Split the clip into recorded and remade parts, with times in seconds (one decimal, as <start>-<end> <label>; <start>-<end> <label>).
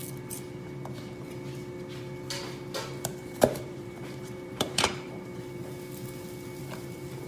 0.0-3.1 recorded; 3.1-5.7 remade; 5.7-6.6 recorded; 6.6-7.3 remade